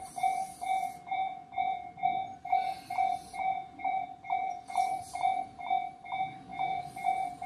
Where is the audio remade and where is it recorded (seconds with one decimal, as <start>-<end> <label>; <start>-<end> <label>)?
0.0-7.5 recorded